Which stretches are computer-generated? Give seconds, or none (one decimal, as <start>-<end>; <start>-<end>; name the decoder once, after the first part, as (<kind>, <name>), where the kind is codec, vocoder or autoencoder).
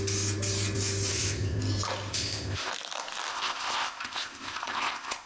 1.1-1.6 (codec, ZipCodec); 2.1-2.7; 3.3-5.3